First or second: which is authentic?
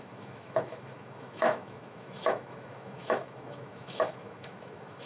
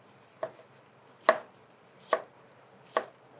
second